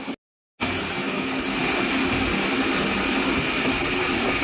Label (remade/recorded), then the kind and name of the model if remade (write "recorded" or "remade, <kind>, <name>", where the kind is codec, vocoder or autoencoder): recorded